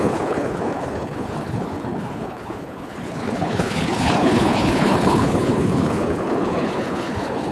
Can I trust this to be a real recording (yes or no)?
no